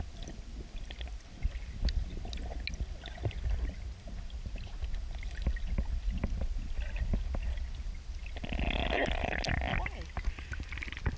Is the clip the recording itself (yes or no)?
yes